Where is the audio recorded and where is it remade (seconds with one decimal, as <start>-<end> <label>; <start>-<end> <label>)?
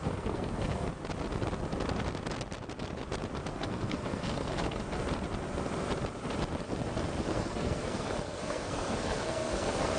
0.0-0.9 remade; 0.9-3.5 recorded; 3.5-4.8 remade; 4.8-7.2 recorded; 7.2-10.0 remade